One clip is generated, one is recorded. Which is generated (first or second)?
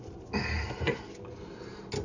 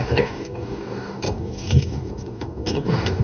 second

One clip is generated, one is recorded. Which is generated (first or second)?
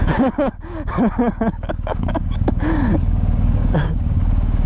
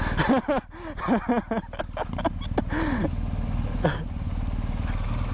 first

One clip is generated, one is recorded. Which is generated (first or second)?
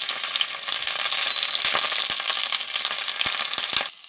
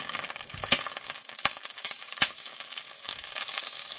second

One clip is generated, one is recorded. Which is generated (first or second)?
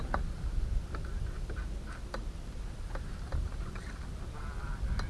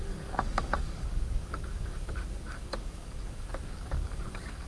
second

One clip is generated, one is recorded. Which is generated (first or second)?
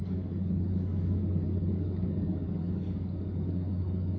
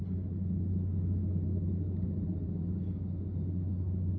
first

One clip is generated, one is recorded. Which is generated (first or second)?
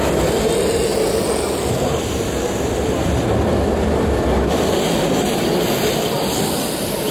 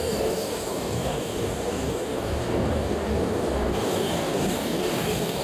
second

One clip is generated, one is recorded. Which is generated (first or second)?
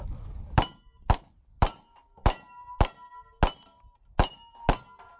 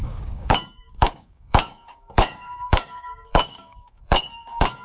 second